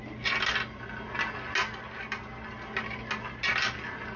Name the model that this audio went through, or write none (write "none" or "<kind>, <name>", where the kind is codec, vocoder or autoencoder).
none